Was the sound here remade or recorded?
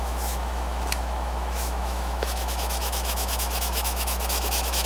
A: remade